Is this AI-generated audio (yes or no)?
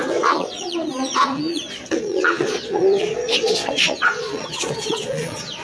yes